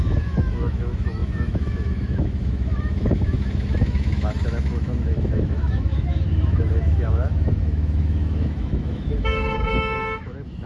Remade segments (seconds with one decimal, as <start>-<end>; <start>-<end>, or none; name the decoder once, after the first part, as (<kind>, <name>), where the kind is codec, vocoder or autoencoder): 0.0-10.7 (autoencoder, DAC-VAE)